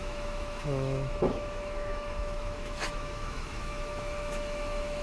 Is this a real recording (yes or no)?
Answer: no